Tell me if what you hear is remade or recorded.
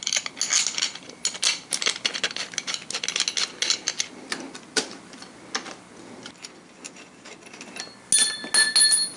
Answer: recorded